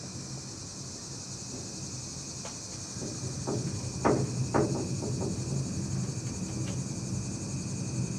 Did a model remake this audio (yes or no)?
no